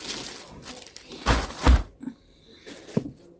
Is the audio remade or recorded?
recorded